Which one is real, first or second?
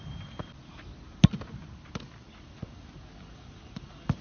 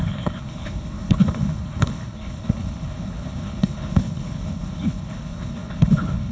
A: first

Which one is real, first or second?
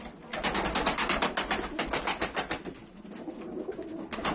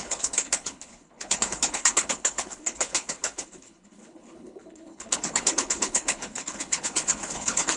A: first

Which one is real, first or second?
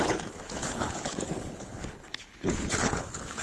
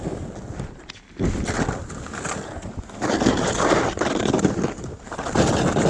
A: second